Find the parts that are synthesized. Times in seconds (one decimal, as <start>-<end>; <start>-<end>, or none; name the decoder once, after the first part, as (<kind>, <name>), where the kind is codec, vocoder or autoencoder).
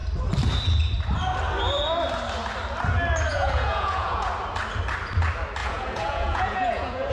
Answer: 3.3-4.3 (vocoder, Vocos); 5.6-7.1